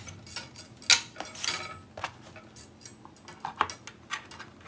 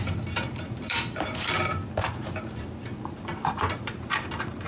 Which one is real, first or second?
first